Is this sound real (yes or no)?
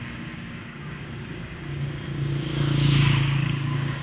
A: no